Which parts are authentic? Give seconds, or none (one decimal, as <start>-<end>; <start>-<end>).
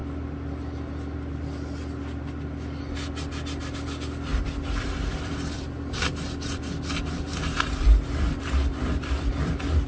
0.0-4.3; 9.3-9.9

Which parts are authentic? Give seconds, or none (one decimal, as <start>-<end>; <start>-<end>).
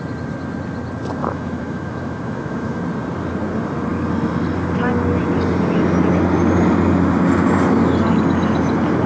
0.0-1.2; 2.8-9.1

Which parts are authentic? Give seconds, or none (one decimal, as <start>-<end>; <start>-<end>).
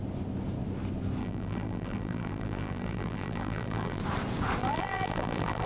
0.0-1.2; 4.0-4.6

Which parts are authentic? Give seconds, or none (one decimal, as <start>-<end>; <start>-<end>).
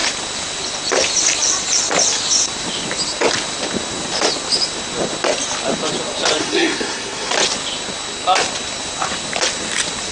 0.0-6.4; 7.3-10.1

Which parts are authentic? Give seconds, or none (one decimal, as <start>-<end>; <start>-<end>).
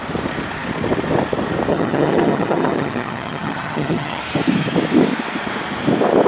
0.0-1.7; 4.2-6.3